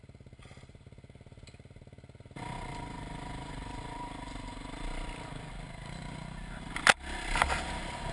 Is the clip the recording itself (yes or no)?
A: yes